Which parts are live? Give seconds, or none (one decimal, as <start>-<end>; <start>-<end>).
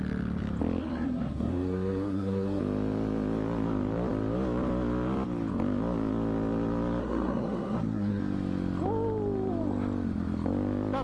0.0-0.8; 2.6-7.0; 8.2-11.0